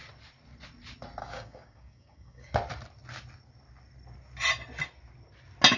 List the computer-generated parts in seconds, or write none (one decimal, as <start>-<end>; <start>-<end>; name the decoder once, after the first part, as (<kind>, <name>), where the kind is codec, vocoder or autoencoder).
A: 1.2-2.5 (codec, DAC)